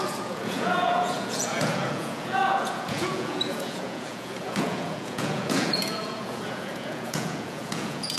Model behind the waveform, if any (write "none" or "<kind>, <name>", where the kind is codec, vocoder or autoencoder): vocoder, Vocos